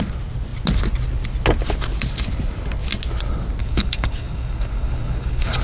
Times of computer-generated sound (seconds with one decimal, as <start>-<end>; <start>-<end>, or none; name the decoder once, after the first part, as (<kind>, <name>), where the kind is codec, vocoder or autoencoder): 3.6-5.6 (codec, DAC)